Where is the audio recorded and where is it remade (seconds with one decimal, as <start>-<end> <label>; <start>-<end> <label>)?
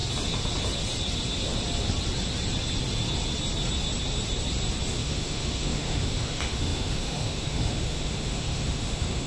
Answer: 0.0-4.9 recorded; 4.9-9.3 remade